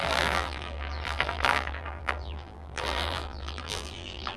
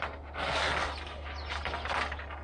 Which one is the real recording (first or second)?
second